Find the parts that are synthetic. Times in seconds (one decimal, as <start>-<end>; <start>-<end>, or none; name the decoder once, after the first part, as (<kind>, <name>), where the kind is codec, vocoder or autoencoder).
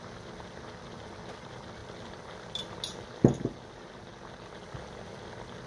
none